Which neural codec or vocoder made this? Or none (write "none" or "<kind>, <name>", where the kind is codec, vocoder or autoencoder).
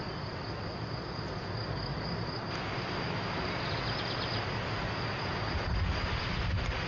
none